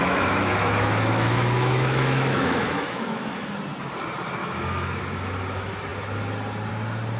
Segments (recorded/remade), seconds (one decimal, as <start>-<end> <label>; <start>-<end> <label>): 0.0-3.5 remade; 3.5-4.4 recorded; 4.4-5.0 remade; 5.0-7.2 recorded